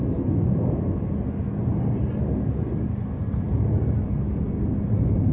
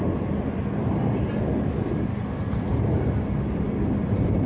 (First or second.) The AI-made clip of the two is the second